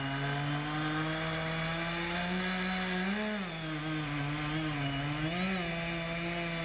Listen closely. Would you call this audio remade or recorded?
recorded